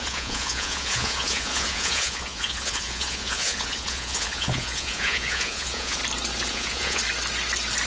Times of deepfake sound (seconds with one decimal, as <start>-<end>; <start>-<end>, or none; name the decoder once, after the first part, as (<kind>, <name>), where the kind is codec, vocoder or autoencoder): 0.0-6.0 (vocoder, Vocos); 6.5-7.0